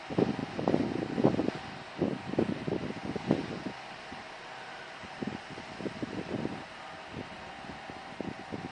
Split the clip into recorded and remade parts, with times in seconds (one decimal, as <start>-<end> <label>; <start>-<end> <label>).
0.0-8.7 recorded